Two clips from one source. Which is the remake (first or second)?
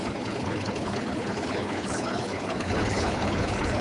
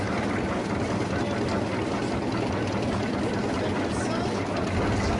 first